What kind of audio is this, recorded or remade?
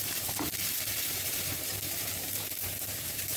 remade